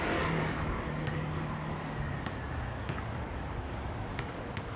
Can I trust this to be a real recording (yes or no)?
no